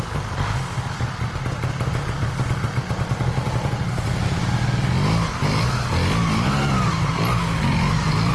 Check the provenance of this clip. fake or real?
real